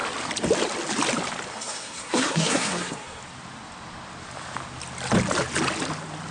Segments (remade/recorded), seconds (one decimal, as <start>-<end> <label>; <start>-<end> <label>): 0.0-1.5 recorded; 1.5-3.2 remade; 3.2-6.3 recorded